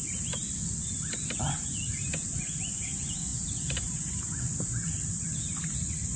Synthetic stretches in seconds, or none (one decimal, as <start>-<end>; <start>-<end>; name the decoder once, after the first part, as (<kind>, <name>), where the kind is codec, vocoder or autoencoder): 3.3-6.2 (vocoder, BigVGAN v2)